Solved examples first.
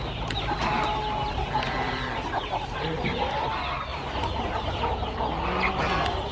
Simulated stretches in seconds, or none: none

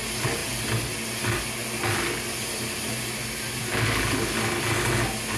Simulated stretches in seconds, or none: none

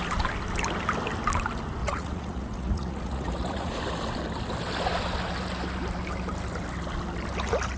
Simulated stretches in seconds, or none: 1.8-3.8 (vocoder, Vocos)

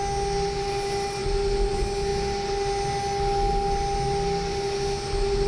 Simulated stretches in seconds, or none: none

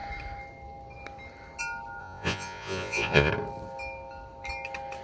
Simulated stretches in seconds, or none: 2.0-3.3 (vocoder, Vocos)

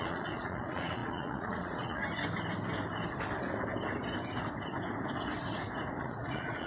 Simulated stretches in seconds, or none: 0.0-2.0 (vocoder, Vocos); 6.0-6.7